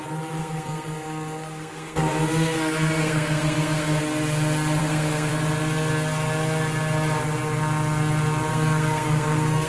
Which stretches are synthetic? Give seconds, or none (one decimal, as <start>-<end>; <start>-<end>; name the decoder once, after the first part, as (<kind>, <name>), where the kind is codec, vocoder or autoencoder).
0.4-4.0 (codec, SNAC); 4.8-5.3; 8.5-9.7